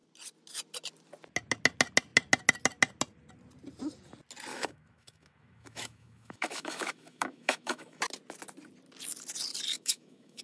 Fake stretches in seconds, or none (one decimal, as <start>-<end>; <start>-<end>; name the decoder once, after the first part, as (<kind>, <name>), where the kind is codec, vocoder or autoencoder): 4.5-8.0 (autoencoder, DAC-VAE); 9.7-10.4